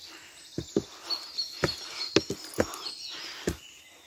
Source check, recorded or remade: recorded